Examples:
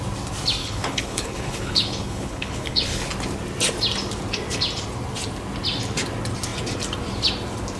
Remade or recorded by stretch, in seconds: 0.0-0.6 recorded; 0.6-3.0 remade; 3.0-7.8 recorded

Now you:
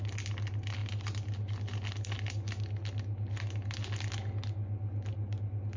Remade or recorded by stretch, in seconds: 0.0-5.8 recorded

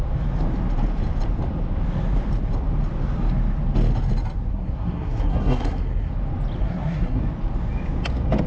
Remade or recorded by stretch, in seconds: 0.0-4.5 recorded; 4.5-6.1 remade; 6.1-6.6 recorded; 6.6-7.2 remade; 7.2-8.5 recorded